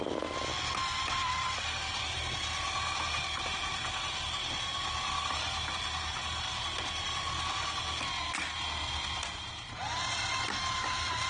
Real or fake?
real